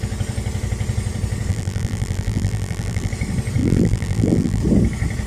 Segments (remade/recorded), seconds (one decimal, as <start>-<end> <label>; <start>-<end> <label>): 0.0-1.5 recorded; 1.5-3.1 remade; 3.1-3.6 recorded; 3.6-4.6 remade; 4.6-5.3 recorded